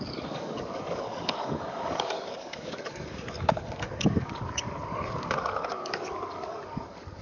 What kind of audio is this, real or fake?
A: fake